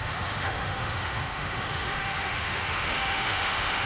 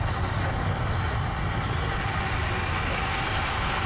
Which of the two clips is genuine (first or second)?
second